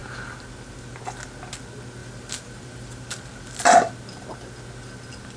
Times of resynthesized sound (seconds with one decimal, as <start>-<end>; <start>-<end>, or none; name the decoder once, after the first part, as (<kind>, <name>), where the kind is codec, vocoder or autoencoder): 2.0-3.9 (vocoder, BigVGAN v2)